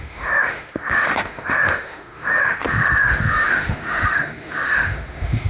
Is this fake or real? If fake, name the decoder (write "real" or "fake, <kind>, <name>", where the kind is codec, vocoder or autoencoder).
fake, autoencoder, DAC-VAE